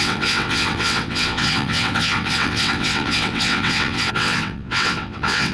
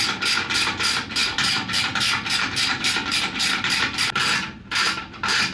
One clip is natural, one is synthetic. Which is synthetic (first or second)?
first